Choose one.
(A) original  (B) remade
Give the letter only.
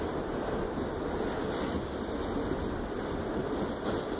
A